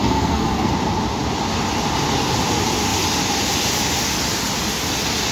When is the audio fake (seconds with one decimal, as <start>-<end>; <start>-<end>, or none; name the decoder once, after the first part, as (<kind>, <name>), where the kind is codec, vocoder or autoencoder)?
0.0-0.7 (codec, SNAC)